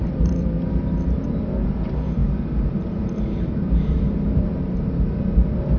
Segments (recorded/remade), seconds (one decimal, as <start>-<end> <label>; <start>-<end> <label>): 0.0-5.8 remade